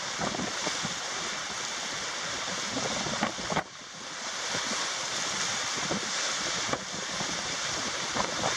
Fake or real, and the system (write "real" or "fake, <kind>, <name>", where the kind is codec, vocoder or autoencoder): real